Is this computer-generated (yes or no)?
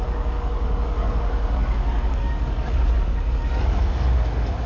yes